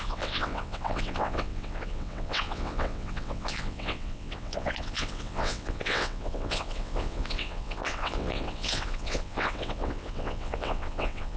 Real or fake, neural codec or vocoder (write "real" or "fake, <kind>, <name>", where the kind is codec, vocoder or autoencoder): fake, vocoder, WaveNeXt